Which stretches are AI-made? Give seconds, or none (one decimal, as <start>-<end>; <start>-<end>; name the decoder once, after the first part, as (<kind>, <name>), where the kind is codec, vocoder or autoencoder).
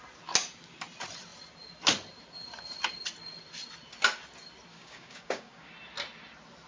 4.7-5.7 (codec, DAC)